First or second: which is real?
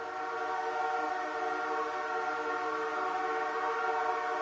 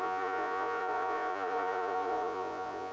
first